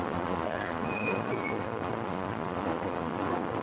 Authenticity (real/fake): fake